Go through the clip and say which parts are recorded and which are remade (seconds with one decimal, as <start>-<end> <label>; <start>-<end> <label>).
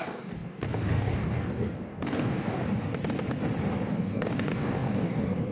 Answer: 0.0-2.6 remade; 2.6-3.9 recorded; 3.9-5.5 remade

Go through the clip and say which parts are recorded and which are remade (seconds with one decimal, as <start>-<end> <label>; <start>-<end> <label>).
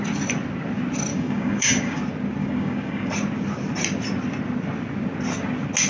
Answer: 0.0-1.1 recorded; 1.1-2.0 remade; 2.0-2.4 recorded; 2.4-3.1 remade; 3.1-5.9 recorded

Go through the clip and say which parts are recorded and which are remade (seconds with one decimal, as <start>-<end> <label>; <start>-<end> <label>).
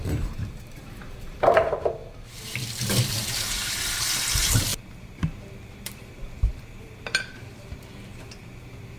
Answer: 0.0-2.0 remade; 2.0-3.1 recorded; 3.1-9.0 remade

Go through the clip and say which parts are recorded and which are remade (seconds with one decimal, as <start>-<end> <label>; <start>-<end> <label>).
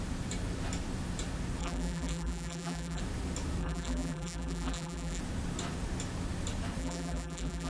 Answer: 0.0-1.6 recorded; 1.6-3.0 remade; 3.0-3.6 recorded; 3.6-5.2 remade; 5.2-6.8 recorded; 6.8-7.7 remade